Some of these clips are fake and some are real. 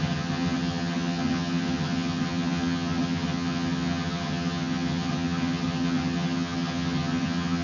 fake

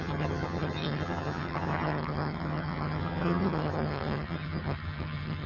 fake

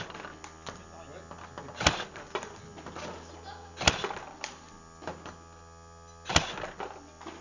real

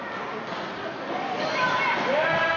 real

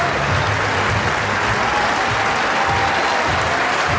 real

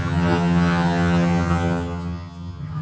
fake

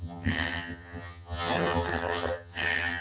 fake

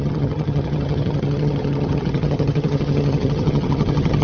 fake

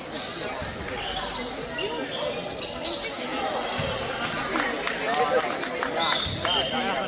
real